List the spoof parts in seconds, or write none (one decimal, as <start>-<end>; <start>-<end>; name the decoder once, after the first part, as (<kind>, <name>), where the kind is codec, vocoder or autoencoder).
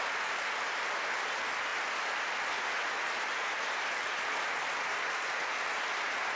none